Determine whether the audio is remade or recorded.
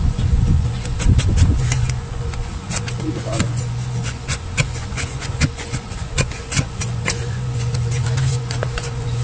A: remade